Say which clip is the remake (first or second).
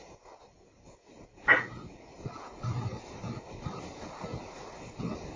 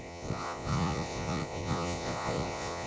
second